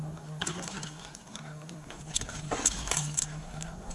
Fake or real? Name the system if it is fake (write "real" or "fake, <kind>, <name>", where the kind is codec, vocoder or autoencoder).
fake, codec, SNAC